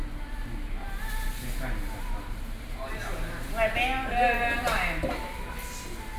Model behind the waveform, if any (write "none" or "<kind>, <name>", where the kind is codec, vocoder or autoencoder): none